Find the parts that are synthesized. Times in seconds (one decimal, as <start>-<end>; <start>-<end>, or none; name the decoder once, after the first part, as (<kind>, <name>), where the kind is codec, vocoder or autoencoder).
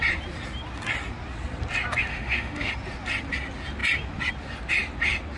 2.1-2.7 (autoencoder, DAC-VAE)